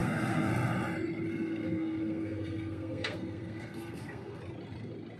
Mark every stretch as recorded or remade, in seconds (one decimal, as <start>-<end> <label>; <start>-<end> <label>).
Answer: 0.0-0.5 remade; 0.5-1.3 recorded; 1.3-4.4 remade; 4.4-5.2 recorded